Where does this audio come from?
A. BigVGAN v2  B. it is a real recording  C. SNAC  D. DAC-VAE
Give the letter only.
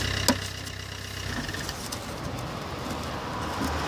B